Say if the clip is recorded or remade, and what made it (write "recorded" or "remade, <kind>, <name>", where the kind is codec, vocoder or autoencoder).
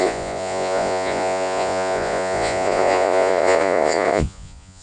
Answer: remade, vocoder, Vocos